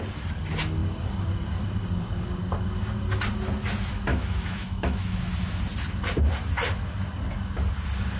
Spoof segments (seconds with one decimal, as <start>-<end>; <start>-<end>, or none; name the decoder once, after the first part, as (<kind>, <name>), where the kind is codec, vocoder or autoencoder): 4.1-5.2 (autoencoder, DAC-VAE)